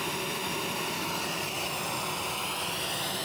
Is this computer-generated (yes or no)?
no